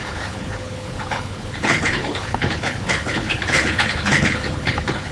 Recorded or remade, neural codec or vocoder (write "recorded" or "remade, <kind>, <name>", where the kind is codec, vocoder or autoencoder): remade, codec, HILCodec